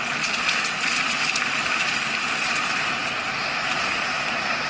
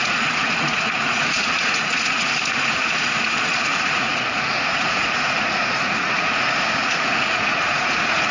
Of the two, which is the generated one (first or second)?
second